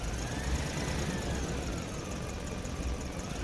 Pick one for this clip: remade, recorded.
recorded